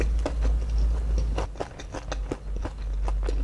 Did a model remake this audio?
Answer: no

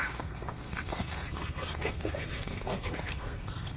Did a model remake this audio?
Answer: yes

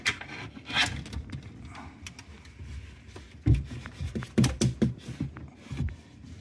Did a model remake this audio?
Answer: no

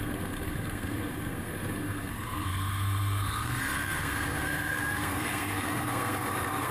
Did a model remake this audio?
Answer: yes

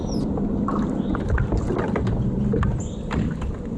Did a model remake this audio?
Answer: no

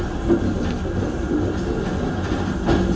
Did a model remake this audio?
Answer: no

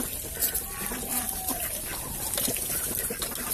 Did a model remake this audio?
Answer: no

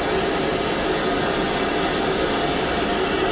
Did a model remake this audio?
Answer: no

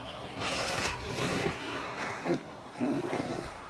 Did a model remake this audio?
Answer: yes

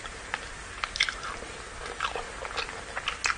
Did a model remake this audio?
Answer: no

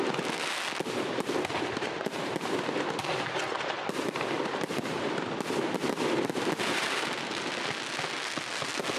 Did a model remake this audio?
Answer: no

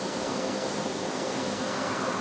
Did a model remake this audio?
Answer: yes